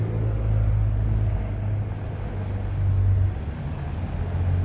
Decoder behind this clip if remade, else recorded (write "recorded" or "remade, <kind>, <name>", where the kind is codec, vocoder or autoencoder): recorded